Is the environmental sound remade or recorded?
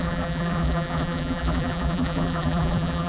remade